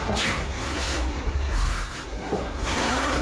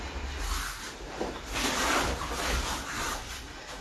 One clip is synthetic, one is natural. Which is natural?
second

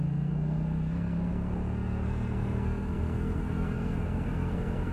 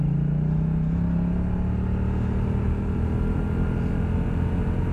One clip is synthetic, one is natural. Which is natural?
second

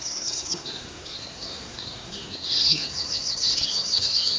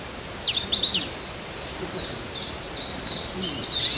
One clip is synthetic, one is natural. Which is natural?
second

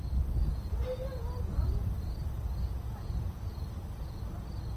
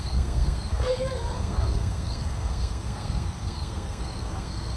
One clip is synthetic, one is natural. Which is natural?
first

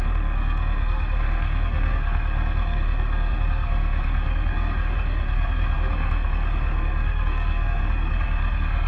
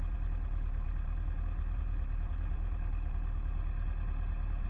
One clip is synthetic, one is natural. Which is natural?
second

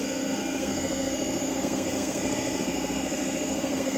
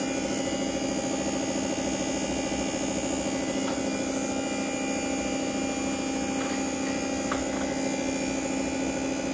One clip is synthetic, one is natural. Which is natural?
second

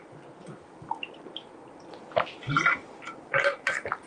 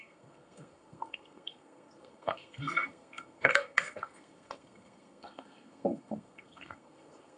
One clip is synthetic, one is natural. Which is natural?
first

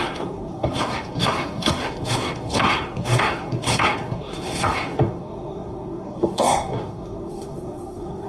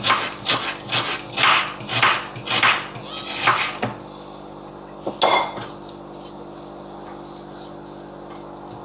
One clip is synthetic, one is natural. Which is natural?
second